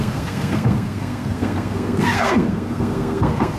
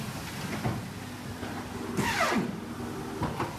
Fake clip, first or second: first